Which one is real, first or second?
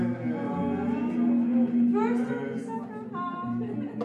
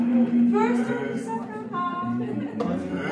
first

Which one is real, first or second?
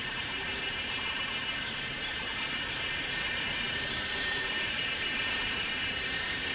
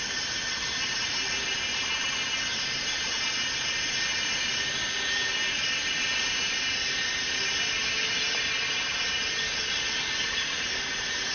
second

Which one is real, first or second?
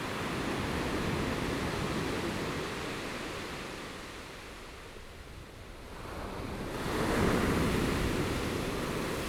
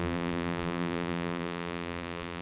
first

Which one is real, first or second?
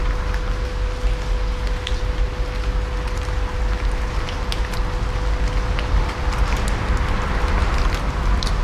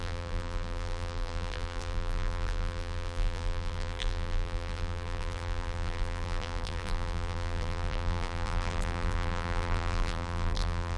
first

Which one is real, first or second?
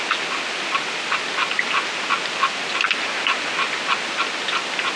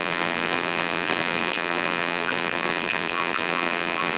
first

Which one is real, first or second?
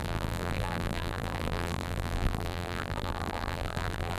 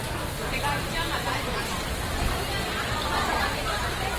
second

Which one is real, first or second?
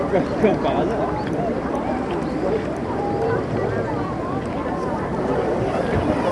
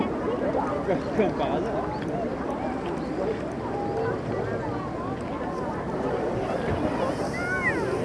second